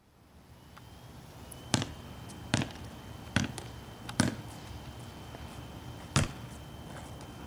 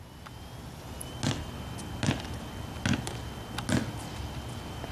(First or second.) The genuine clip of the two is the second